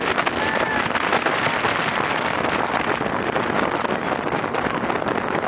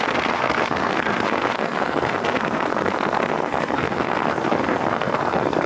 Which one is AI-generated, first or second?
second